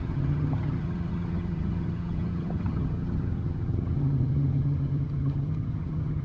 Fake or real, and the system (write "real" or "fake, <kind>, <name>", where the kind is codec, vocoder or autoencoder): fake, vocoder, HiFi-GAN